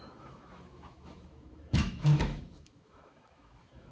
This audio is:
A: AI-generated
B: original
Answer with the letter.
A